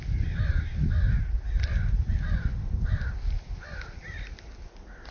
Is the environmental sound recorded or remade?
recorded